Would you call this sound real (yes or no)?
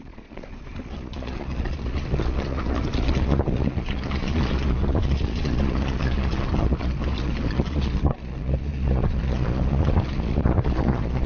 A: no